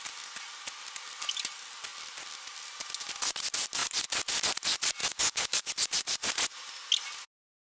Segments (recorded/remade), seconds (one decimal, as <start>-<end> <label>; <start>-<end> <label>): 0.0-5.0 recorded; 5.0-5.7 remade; 5.7-7.8 recorded